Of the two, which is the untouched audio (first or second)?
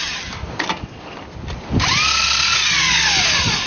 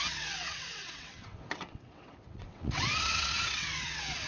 first